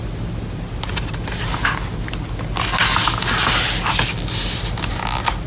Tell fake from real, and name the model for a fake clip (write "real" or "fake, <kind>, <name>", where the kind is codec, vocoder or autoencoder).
real